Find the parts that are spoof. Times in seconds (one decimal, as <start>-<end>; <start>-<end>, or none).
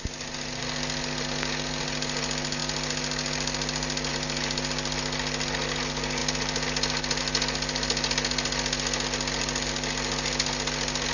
none